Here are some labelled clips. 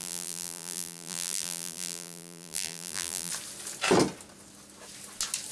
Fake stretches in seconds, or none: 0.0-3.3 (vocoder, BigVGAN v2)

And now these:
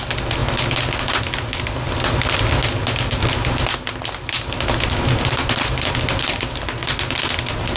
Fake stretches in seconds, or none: none

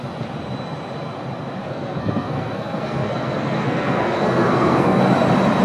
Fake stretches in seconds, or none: 1.6-5.0 (codec, SNAC)

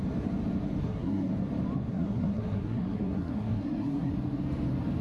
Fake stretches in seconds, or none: 0.8-1.3 (codec, SNAC); 1.9-4.1

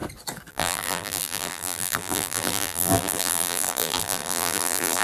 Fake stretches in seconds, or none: 0.5-5.0 (vocoder, BigVGAN v2)